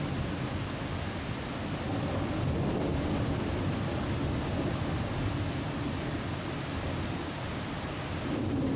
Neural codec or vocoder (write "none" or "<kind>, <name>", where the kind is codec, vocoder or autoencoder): none